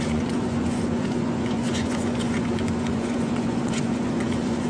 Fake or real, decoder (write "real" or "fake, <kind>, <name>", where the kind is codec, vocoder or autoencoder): fake, vocoder, Vocos